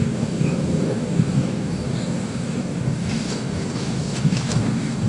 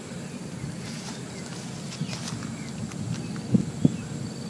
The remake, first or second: first